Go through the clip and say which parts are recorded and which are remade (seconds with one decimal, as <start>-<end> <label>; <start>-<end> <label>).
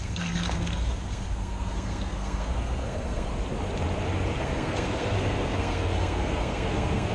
0.0-3.3 remade; 3.3-4.4 recorded; 4.4-7.1 remade